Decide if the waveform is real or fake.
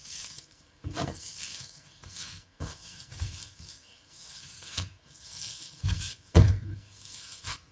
fake